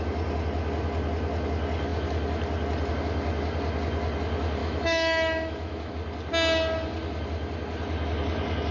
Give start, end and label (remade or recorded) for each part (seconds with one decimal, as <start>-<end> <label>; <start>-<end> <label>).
0.0-4.6 recorded; 4.6-5.9 remade; 5.9-8.7 recorded